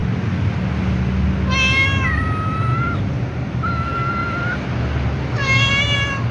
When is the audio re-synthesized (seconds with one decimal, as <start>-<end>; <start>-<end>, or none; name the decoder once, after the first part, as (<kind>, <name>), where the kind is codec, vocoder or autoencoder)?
none